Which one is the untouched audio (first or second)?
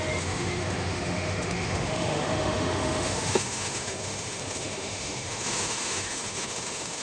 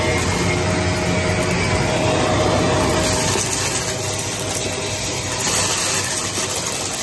second